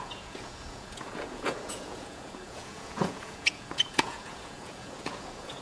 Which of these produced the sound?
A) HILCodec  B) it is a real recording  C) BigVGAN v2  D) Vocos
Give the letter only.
D